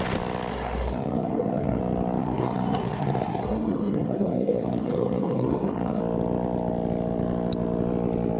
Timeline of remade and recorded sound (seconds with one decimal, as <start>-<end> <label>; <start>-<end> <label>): 0.0-0.5 recorded; 0.5-1.8 remade; 1.8-2.2 recorded; 2.2-6.0 remade; 6.0-8.4 recorded